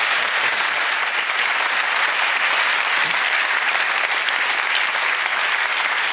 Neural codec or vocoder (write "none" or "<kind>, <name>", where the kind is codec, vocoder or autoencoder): none